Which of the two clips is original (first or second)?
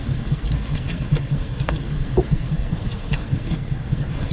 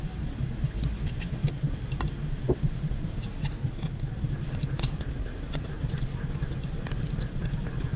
second